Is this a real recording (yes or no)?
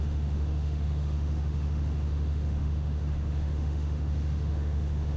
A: no